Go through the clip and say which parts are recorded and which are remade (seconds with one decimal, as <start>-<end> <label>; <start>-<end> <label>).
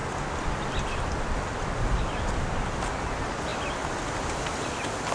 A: 0.0-5.1 recorded